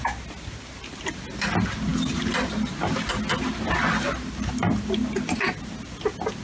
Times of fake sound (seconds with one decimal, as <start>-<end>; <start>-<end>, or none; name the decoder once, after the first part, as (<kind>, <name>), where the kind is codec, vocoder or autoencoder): none